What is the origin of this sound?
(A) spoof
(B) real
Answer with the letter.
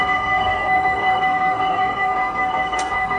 A